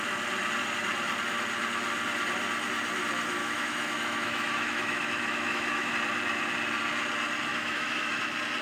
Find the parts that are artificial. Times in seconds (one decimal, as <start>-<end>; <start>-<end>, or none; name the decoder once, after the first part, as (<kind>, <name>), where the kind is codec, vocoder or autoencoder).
3.4-5.9 (autoencoder, DAC-VAE); 7.5-8.2